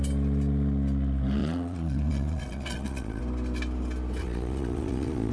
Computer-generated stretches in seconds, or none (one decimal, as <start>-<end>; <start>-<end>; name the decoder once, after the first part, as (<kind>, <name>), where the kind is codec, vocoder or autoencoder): 1.4-3.2 (vocoder, Vocos); 4.2-5.3